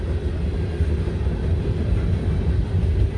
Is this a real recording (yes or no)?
yes